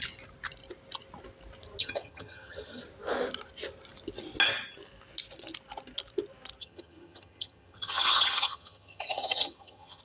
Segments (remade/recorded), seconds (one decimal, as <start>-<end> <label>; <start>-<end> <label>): 0.0-1.8 recorded; 1.8-2.8 remade; 2.8-6.6 recorded; 6.6-10.0 remade